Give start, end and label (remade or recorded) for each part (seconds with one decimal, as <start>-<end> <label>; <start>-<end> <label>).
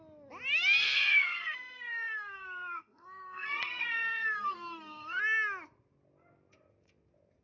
0.0-0.8 recorded; 0.8-5.2 remade; 5.2-7.4 recorded